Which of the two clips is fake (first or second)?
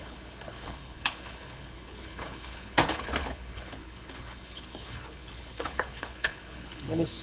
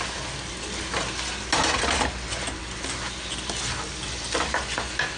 first